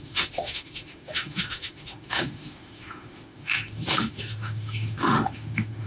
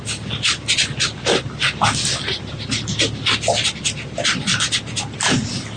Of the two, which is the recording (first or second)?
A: second